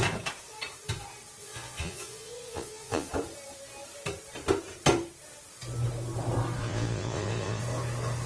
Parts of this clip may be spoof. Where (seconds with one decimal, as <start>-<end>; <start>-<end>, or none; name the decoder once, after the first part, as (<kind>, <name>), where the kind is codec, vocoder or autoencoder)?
1.4-3.1 (vocoder, Vocos); 6.6-7.6